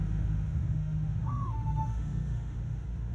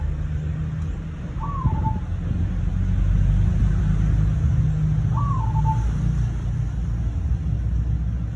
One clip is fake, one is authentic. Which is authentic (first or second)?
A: second